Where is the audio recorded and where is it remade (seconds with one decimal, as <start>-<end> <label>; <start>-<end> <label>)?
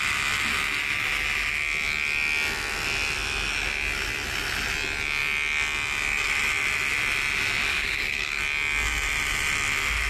0.0-7.7 recorded; 7.7-8.4 remade; 8.4-10.1 recorded